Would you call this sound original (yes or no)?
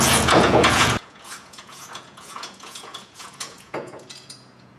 no